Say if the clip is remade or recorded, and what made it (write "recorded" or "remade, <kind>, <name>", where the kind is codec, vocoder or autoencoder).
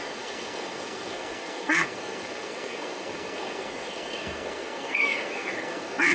remade, codec, SNAC